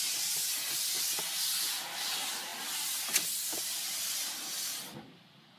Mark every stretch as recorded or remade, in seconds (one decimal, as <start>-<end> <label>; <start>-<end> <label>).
0.0-5.6 recorded